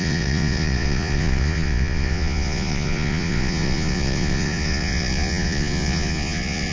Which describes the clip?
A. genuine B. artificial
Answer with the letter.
B